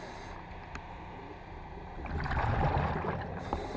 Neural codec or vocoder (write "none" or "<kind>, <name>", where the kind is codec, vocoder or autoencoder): none